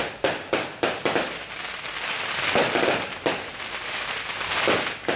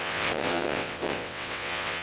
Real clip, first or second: first